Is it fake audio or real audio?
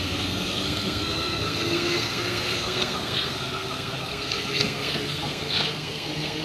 fake